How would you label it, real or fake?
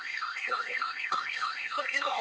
fake